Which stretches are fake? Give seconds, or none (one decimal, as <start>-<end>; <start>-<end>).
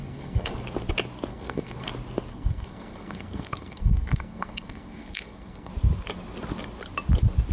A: 0.0-0.5; 1.3-1.9; 2.3-5.7